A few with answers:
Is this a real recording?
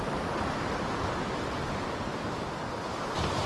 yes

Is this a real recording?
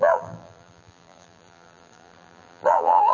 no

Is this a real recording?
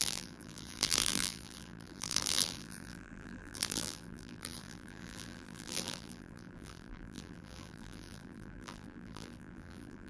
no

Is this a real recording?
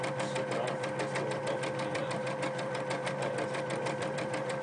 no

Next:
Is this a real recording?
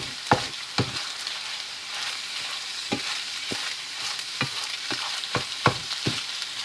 no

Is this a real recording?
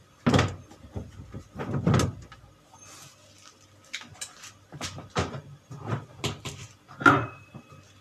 yes